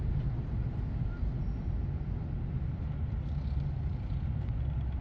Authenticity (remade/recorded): recorded